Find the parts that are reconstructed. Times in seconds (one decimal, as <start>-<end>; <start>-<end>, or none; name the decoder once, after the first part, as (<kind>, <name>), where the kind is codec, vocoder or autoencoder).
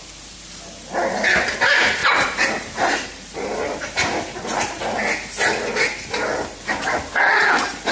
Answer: 2.0-4.8 (vocoder, BigVGAN v2)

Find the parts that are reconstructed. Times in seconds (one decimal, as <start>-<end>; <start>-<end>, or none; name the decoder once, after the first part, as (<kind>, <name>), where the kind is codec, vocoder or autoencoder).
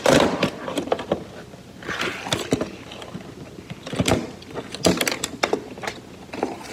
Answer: none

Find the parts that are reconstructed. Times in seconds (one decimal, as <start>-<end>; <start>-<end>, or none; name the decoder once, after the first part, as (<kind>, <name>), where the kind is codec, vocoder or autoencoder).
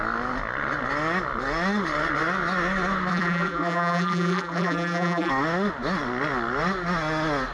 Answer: 3.1-5.3 (vocoder, BigVGAN v2)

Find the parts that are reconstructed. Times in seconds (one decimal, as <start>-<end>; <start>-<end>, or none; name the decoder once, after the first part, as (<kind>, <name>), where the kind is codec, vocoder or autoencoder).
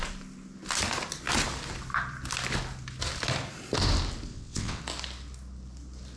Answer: 4.3-4.8 (vocoder, WaveNeXt)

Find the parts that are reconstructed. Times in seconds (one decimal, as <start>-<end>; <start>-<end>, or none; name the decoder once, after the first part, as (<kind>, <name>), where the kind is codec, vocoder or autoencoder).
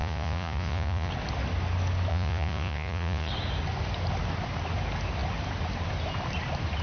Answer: 0.0-1.1 (vocoder, Vocos); 2.1-3.3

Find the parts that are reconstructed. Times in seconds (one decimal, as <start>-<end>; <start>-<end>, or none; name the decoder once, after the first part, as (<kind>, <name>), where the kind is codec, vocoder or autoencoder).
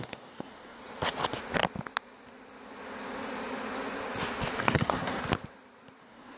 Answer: 0.0-0.8 (codec, SNAC); 4.6-5.2; 6.0-6.4